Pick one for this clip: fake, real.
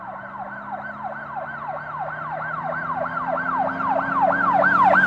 real